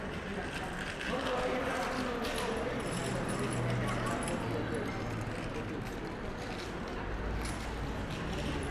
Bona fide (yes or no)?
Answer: yes